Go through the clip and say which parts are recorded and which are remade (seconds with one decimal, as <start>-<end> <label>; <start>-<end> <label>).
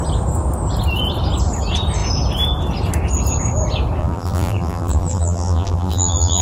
0.0-4.0 recorded; 4.0-6.4 remade